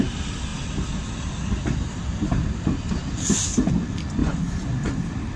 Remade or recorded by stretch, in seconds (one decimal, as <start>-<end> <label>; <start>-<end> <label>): 0.0-4.2 recorded; 4.2-4.9 remade; 4.9-5.4 recorded